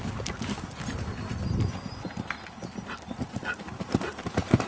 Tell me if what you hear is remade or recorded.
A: recorded